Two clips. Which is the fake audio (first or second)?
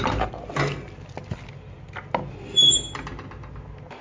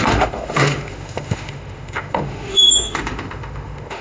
second